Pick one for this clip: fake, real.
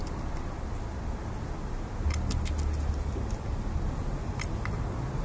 real